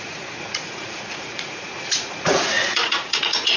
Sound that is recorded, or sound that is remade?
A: remade